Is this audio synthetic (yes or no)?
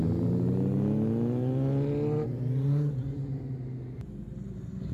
no